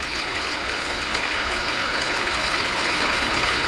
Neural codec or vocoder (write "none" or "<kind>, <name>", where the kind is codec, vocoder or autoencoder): codec, HILCodec